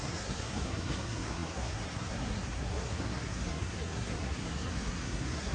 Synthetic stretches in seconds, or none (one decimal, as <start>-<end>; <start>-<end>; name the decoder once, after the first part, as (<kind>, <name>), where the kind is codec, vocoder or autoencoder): 0.0-5.5 (codec, SNAC)